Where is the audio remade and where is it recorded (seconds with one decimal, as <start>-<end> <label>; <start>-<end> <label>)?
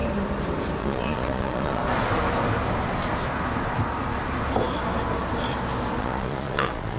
0.0-0.8 recorded; 0.8-1.8 remade; 1.8-6.0 recorded; 6.0-7.0 remade